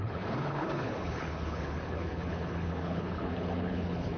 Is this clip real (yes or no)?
no